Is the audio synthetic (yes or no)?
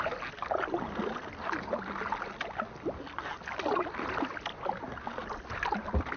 no